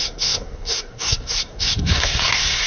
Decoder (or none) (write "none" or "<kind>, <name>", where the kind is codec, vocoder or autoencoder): codec, SNAC